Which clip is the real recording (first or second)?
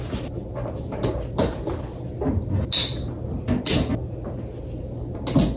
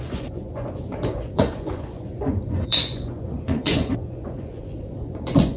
first